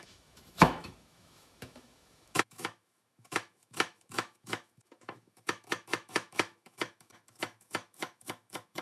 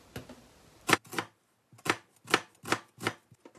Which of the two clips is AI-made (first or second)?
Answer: first